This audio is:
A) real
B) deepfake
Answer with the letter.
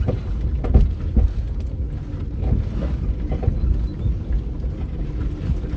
A